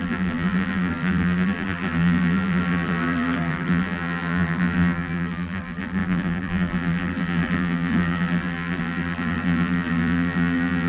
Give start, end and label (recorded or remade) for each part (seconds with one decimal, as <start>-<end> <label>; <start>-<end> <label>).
0.0-10.9 remade